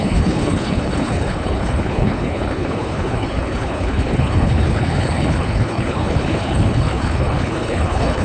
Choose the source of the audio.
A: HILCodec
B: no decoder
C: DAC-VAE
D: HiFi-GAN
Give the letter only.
A